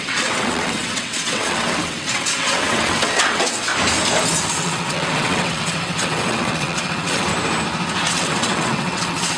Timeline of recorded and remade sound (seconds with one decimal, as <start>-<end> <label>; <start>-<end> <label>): 0.0-3.7 remade; 3.7-4.4 recorded; 4.4-7.3 remade; 7.3-8.1 recorded; 8.1-9.4 remade

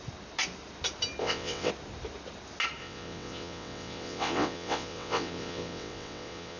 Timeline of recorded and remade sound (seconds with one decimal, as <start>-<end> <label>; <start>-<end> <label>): 0.0-1.2 recorded; 1.2-1.7 remade; 1.7-2.8 recorded; 2.8-6.6 remade